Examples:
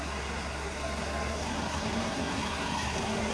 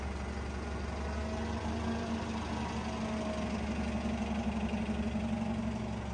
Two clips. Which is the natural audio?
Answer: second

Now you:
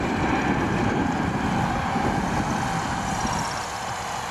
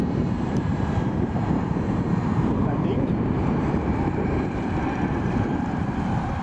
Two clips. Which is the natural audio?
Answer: first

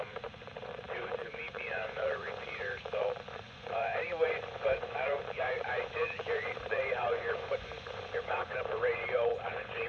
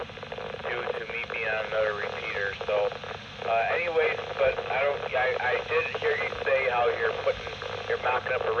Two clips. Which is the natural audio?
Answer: second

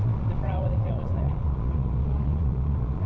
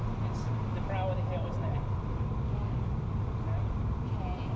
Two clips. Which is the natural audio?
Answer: second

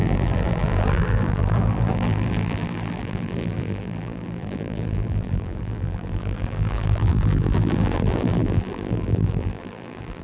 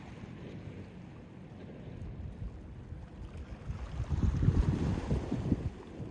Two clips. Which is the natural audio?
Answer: second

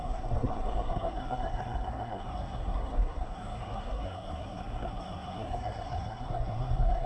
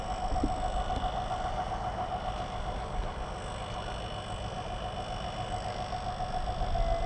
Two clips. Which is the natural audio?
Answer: second